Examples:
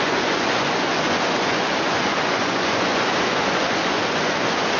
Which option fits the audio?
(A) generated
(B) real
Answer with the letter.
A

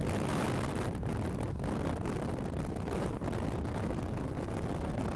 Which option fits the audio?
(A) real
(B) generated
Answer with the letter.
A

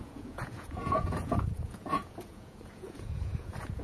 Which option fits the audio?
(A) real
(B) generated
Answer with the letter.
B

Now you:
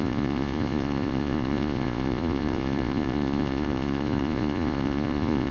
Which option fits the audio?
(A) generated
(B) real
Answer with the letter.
A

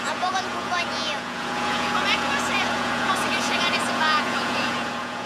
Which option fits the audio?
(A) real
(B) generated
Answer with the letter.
B